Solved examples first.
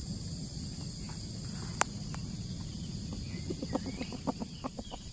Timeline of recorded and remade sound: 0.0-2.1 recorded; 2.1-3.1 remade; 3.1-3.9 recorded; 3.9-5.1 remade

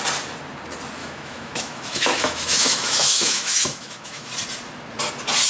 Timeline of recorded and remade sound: 0.0-1.0 recorded; 1.0-4.3 remade; 4.3-5.5 recorded

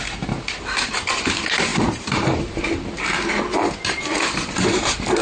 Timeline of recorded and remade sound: 0.0-1.7 recorded; 1.7-2.6 remade; 2.6-5.2 recorded

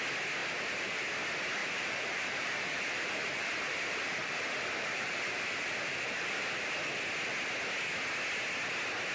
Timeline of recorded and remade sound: 0.0-0.4 recorded; 0.4-1.0 remade; 1.0-1.6 recorded; 1.6-6.7 remade; 6.7-9.1 recorded

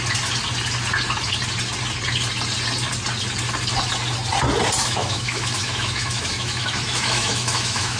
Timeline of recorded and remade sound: 0.0-4.8 recorded; 4.8-8.0 remade

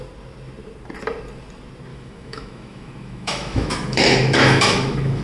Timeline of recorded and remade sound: 0.0-1.9 recorded; 1.9-5.2 remade

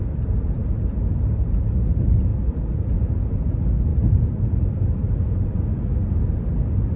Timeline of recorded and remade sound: 0.0-7.0 recorded

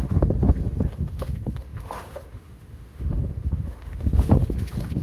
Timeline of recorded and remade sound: 0.0-5.0 remade